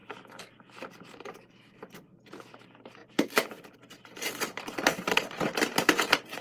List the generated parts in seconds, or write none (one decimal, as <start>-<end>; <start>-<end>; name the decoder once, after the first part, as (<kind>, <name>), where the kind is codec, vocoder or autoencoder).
3.0-4.6 (vocoder, BigVGAN v2)